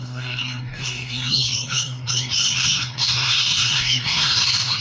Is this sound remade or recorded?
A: remade